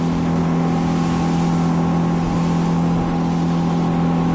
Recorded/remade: recorded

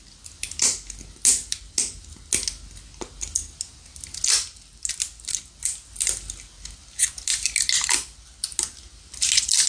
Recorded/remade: recorded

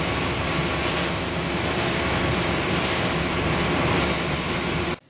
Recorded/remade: remade